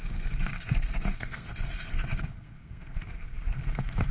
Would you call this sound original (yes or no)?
no